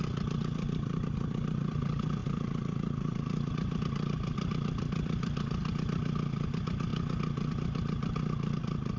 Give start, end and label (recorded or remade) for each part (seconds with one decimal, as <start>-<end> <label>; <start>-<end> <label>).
0.0-5.6 remade; 5.6-6.5 recorded; 6.5-6.9 remade; 6.9-7.5 recorded; 7.5-9.0 remade